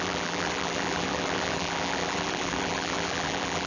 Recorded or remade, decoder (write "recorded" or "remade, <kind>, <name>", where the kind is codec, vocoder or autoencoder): remade, vocoder, BigVGAN v2